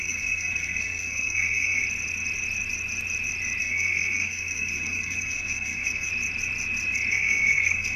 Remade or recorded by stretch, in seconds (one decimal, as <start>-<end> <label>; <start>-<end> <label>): 0.0-1.8 remade; 1.8-3.6 recorded; 3.6-6.1 remade; 6.1-7.1 recorded; 7.1-8.0 remade